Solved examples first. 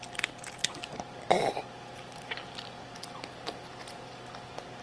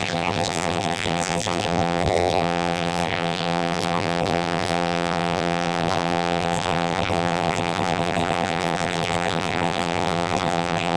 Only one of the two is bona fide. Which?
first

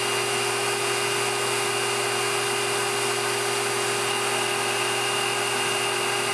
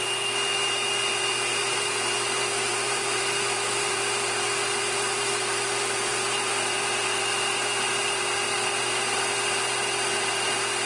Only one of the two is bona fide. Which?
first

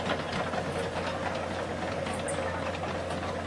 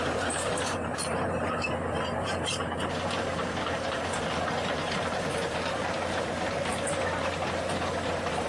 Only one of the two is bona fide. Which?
first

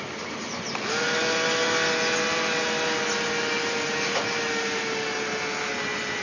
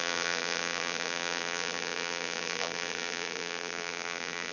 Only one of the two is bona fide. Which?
first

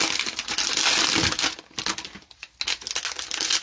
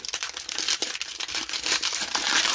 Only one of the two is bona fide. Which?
first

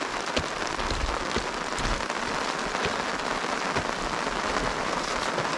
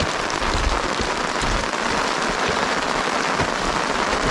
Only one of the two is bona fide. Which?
first